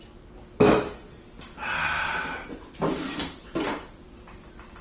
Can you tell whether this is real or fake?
real